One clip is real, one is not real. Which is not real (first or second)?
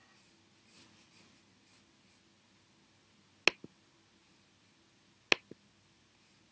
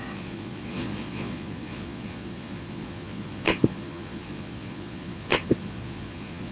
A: second